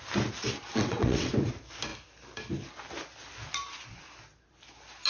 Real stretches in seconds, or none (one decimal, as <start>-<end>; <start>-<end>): 0.0-0.7; 1.3-5.1